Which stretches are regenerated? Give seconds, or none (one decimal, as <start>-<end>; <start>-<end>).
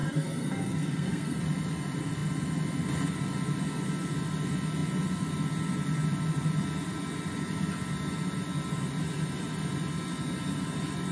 0.0-1.4